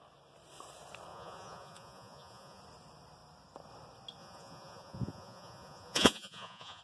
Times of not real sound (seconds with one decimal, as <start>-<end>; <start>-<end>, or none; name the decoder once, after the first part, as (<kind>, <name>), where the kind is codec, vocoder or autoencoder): 1.1-2.6 (vocoder, Vocos); 4.2-6.8